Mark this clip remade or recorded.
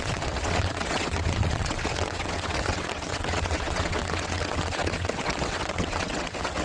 remade